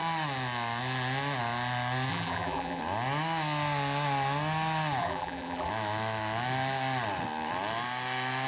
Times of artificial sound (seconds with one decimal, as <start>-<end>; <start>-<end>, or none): 2.1-2.8; 5.0-5.7